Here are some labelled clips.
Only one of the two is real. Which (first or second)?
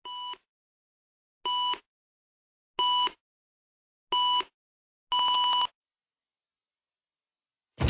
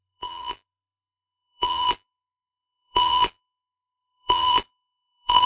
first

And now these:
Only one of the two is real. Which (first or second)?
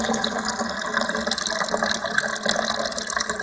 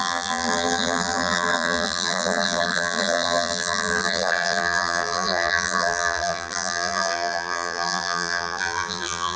first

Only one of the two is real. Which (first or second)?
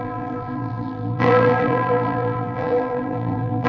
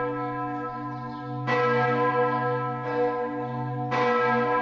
second